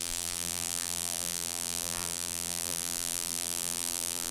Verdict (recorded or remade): remade